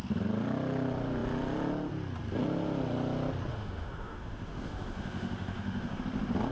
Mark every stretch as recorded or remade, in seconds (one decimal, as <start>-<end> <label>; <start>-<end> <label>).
0.0-3.5 recorded; 3.5-6.0 remade; 6.0-6.5 recorded